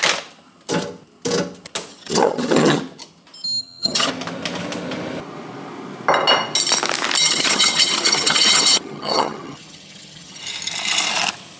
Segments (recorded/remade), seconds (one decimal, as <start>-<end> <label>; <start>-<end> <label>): 0.0-1.9 recorded; 1.9-2.8 remade; 2.8-3.6 recorded; 3.6-4.1 remade; 4.1-7.2 recorded; 7.2-10.4 remade; 10.4-11.6 recorded